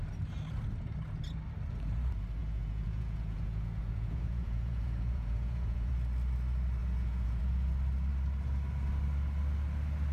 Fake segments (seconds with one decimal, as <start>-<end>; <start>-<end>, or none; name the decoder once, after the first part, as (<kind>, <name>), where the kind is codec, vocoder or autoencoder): 2.4-5.9 (vocoder, Vocos); 6.8-7.4